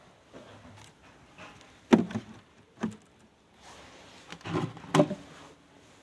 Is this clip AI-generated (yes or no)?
no